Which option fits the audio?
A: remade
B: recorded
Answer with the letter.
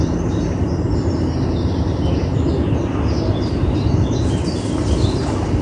B